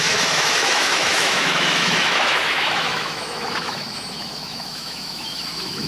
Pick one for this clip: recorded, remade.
remade